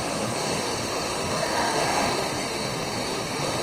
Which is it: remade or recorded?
remade